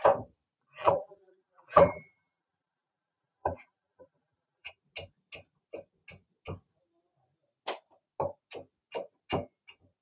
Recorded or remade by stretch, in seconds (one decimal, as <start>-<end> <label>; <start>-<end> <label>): 0.0-0.8 recorded; 0.8-4.7 remade; 4.7-10.0 recorded